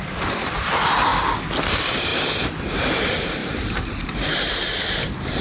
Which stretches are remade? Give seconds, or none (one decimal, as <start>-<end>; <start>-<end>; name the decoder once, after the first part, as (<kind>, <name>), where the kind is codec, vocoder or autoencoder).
0.0-1.1 (vocoder, BigVGAN v2); 1.7-2.1; 2.6-5.4